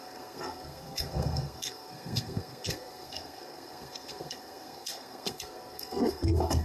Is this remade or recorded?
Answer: remade